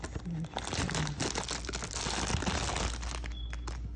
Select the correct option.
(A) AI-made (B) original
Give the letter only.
B